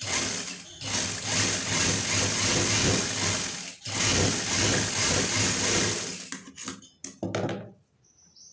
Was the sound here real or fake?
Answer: real